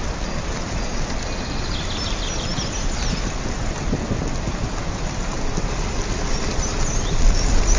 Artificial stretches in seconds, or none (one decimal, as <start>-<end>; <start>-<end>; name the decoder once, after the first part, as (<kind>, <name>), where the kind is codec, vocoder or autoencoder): none